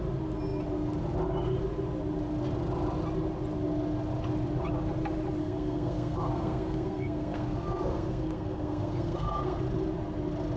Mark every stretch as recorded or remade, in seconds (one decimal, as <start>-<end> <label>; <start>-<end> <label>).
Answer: 0.0-5.4 recorded; 5.4-9.6 remade; 9.6-10.6 recorded

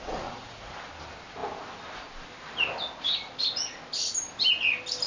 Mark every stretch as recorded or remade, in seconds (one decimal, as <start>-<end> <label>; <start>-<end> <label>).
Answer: 0.0-0.9 remade; 0.9-5.1 recorded

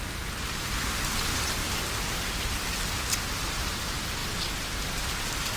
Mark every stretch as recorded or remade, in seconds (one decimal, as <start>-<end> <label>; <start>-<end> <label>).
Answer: 0.0-1.6 recorded; 1.6-3.2 remade; 3.2-5.6 recorded

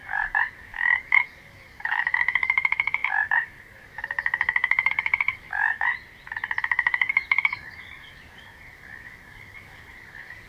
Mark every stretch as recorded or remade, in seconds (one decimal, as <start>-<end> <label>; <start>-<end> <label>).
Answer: 0.0-5.9 remade; 5.9-6.6 recorded; 6.6-10.5 remade

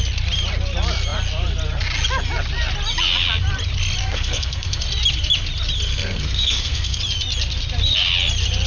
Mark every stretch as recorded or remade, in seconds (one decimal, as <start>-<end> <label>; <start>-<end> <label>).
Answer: 0.0-4.0 recorded; 4.0-4.8 remade; 4.8-5.9 recorded; 5.9-7.0 remade; 7.0-8.7 recorded

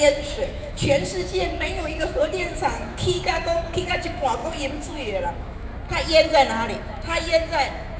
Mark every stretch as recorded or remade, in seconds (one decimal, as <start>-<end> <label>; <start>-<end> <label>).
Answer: 0.0-5.7 remade; 5.7-6.8 recorded; 6.8-8.0 remade

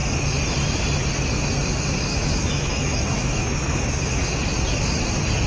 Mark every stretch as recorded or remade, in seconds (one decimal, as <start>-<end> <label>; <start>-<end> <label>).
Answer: 0.0-2.1 recorded; 2.1-4.4 remade; 4.4-5.5 recorded

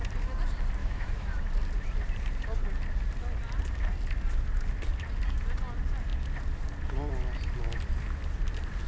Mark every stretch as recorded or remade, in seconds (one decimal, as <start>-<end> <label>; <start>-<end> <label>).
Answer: 0.0-0.8 recorded; 0.8-1.4 remade; 1.4-8.9 recorded